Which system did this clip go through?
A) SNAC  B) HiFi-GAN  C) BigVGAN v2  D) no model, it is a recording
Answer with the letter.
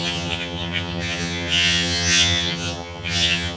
B